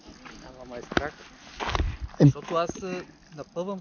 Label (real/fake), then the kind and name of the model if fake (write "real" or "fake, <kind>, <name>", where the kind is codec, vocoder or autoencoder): real